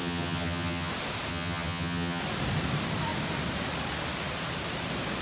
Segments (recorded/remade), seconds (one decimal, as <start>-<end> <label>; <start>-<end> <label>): 0.0-0.9 remade; 0.9-1.3 recorded; 1.3-2.2 remade; 2.2-5.2 recorded